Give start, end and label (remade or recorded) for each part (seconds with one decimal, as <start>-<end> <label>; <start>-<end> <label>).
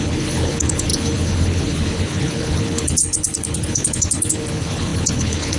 0.0-5.6 remade